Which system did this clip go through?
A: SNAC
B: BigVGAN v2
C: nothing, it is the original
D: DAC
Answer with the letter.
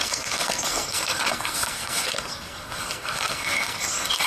A